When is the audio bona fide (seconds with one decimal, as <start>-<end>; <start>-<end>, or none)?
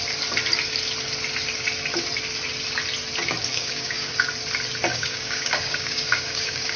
0.0-3.5; 4.1-4.9